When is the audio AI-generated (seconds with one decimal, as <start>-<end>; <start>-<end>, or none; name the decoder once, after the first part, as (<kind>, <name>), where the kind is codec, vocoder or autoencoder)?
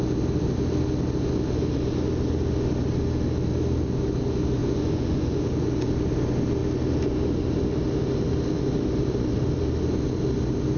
4.6-5.7 (vocoder, Vocos)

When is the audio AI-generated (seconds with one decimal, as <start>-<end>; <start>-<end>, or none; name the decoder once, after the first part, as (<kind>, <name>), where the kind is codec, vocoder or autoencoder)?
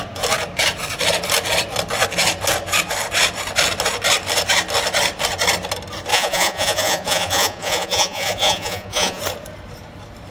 6.1-9.2 (vocoder, Vocos)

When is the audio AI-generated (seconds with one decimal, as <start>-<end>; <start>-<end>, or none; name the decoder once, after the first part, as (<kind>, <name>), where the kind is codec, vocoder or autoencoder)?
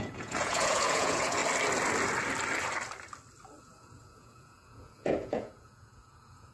0.0-1.4 (vocoder, Vocos); 3.6-6.5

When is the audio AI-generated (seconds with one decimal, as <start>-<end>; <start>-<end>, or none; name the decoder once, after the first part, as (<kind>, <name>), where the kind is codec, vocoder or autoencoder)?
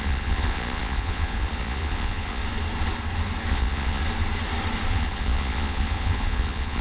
0.0-2.4 (vocoder, Vocos); 3.5-4.0; 4.9-6.8